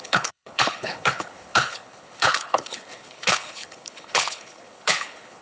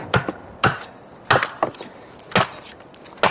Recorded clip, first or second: second